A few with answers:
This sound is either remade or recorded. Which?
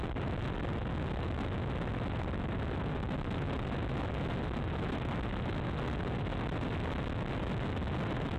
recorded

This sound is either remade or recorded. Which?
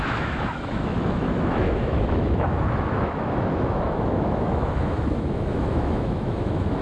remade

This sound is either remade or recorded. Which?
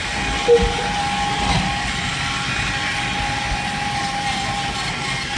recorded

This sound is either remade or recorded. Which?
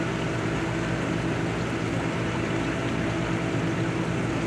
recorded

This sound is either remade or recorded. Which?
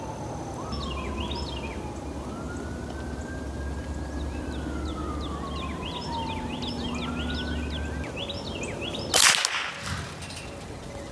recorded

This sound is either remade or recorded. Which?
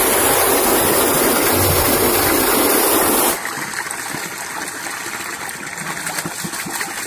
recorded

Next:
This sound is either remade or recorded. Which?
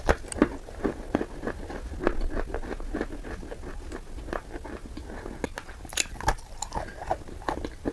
recorded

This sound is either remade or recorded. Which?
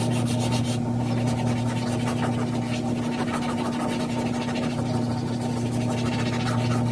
recorded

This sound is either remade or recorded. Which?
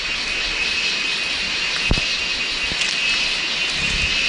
recorded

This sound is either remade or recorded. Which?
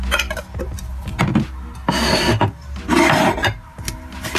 recorded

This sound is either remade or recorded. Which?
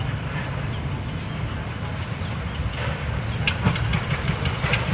recorded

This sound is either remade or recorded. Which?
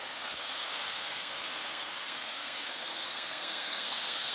remade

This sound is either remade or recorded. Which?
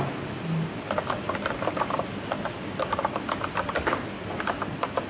recorded